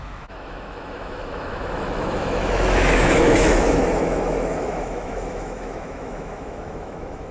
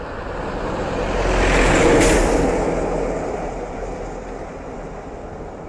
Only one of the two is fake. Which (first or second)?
first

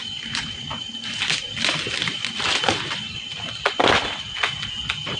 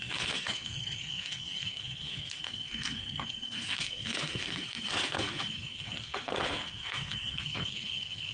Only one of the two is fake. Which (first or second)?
second